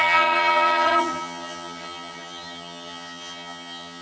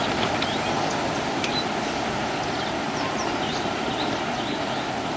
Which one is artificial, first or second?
first